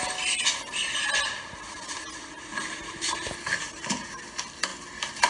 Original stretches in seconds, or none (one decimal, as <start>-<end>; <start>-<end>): 0.0-5.3